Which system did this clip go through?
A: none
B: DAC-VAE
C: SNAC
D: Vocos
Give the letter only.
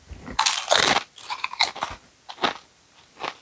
A